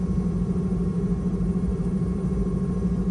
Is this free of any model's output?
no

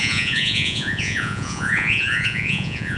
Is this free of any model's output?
no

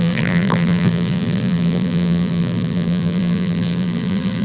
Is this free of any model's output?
no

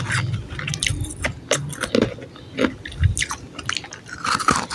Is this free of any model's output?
yes